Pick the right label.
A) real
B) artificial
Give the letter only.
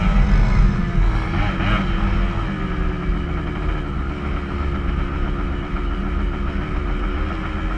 A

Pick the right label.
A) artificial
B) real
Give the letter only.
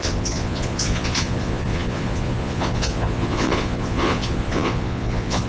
A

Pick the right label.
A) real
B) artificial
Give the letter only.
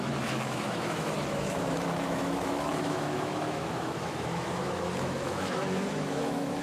B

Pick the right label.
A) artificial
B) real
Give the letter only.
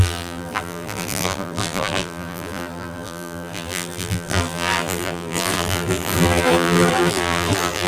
A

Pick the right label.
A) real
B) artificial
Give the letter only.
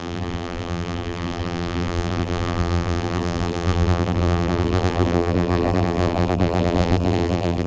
B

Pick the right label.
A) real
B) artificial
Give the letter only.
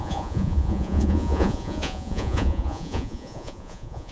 B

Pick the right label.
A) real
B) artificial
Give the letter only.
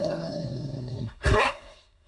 B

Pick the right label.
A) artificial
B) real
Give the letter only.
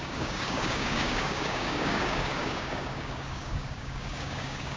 A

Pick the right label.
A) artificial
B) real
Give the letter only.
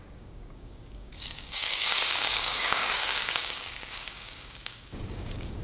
A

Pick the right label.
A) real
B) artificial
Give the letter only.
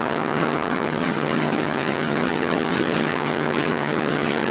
B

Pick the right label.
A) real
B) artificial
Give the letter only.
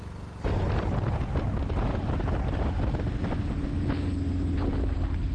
A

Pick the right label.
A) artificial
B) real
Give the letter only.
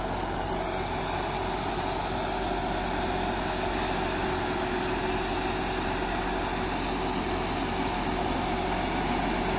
B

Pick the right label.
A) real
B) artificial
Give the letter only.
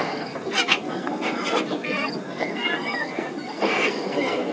B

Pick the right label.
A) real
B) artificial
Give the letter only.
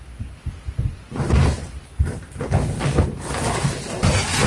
A